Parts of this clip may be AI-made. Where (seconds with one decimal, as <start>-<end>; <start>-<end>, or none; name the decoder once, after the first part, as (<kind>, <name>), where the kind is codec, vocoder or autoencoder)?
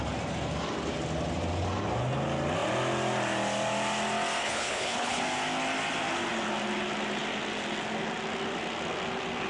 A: 4.4-5.2 (codec, HILCodec)